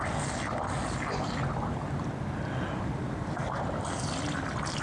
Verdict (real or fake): real